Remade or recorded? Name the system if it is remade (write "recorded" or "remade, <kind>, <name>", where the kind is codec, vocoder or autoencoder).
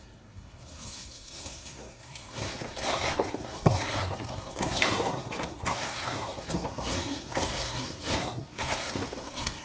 remade, codec, SNAC